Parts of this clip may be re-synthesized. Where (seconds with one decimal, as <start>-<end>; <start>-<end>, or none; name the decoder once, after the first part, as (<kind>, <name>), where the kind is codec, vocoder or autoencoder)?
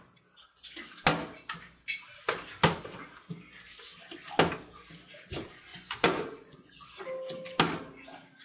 5.7-6.7 (vocoder, Vocos)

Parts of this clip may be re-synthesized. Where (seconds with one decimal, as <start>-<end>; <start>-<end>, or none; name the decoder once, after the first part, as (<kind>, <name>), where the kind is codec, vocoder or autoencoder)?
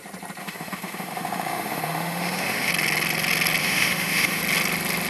0.4-2.7 (autoencoder, DAC-VAE); 3.6-4.4